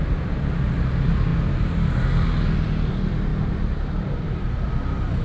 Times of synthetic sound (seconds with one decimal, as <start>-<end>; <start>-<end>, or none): 3.3-4.7